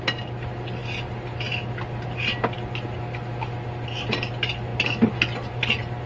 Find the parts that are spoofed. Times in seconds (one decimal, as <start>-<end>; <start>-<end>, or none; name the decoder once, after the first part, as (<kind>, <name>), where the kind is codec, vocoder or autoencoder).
none